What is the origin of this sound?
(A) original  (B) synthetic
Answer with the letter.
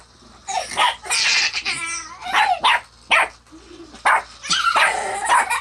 A